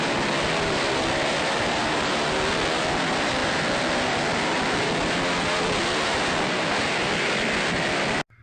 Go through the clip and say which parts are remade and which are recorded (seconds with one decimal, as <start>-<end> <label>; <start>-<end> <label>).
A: 0.0-8.4 recorded